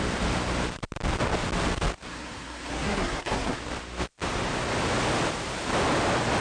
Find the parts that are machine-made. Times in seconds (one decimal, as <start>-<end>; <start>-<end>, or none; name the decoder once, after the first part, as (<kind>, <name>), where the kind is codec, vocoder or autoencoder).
2.1-3.6 (codec, SNAC)